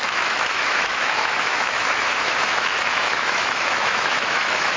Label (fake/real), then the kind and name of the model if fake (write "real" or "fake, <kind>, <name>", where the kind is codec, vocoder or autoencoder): fake, autoencoder, DAC-VAE